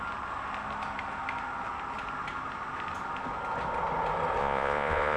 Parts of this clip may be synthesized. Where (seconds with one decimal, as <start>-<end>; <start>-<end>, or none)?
4.4-5.2

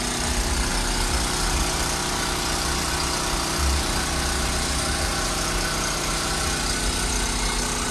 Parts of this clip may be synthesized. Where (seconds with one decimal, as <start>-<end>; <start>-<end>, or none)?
none

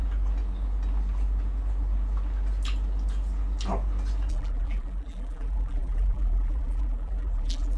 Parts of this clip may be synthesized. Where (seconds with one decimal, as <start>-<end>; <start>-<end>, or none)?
4.3-7.8

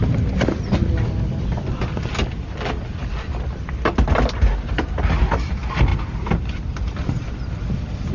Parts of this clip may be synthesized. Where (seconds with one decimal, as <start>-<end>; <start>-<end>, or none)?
none

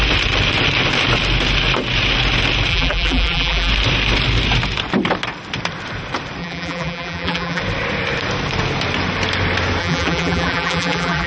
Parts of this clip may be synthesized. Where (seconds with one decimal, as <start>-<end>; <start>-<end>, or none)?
2.7-3.7; 6.4-7.6; 9.8-11.3

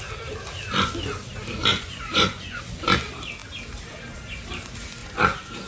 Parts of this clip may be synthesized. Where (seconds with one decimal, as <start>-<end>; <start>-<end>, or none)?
1.7-2.6; 5.0-5.7